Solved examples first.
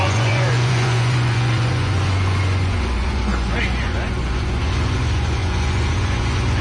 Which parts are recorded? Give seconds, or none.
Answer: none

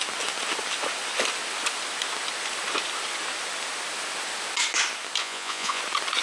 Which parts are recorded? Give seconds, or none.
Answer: 0.0-5.2; 5.8-6.2